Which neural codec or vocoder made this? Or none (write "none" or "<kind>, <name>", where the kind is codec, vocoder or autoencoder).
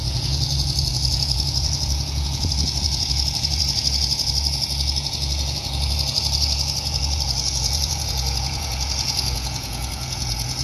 vocoder, Vocos